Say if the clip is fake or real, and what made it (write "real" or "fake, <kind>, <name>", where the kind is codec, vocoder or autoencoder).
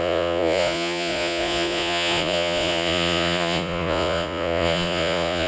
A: fake, vocoder, Vocos